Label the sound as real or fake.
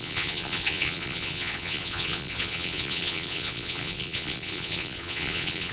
fake